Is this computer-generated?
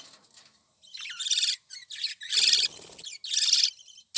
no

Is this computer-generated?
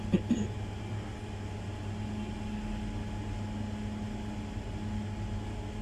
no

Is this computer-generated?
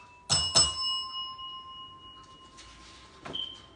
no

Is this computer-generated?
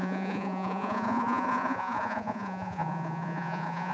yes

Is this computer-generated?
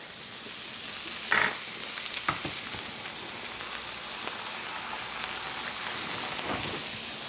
no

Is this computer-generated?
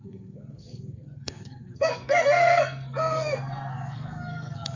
yes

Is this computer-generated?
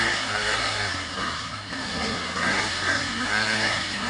yes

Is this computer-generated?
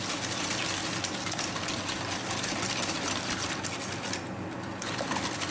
no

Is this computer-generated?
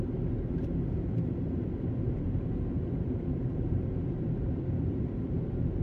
yes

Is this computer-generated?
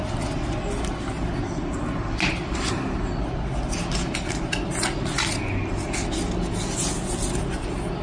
no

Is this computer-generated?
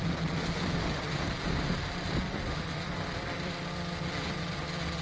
yes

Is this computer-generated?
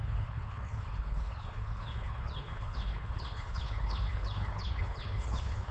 yes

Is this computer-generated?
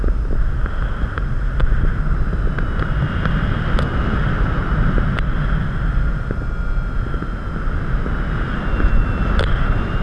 no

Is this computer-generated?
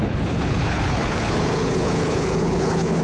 yes